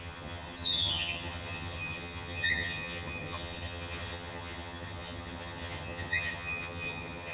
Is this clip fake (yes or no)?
yes